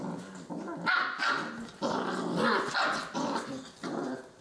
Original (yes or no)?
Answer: yes